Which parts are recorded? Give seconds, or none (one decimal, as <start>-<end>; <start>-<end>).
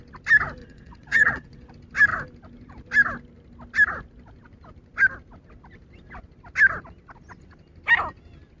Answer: 0.0-0.6; 1.7-8.6